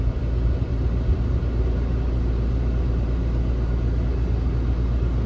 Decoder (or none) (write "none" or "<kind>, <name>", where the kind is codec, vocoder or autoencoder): none